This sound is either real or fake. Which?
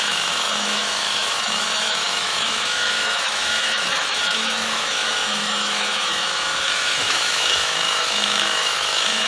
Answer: fake